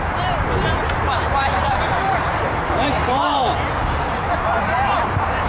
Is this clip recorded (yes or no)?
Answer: no